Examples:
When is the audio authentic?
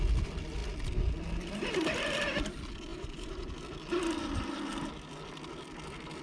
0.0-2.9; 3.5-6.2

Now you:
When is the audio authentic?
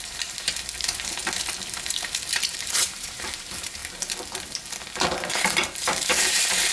1.2-1.9; 3.8-5.3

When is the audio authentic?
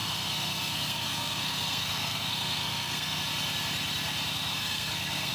3.2-4.5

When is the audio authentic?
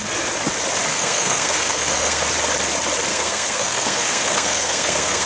0.0-0.9; 2.2-3.1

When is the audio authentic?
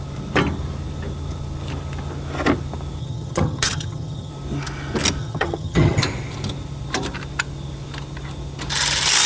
0.0-3.0; 4.3-5.2; 6.0-9.3